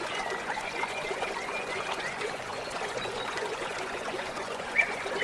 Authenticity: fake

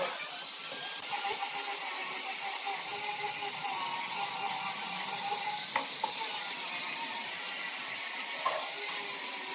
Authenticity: real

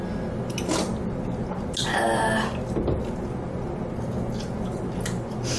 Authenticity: real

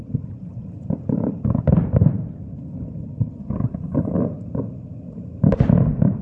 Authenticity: real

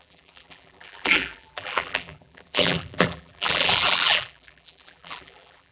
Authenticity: fake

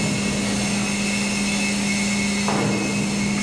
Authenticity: real